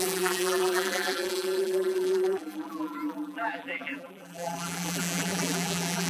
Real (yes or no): no